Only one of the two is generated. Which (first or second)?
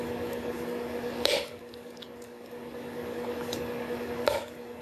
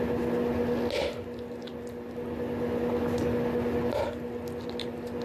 first